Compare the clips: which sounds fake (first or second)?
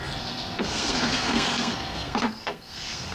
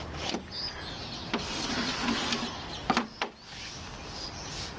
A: first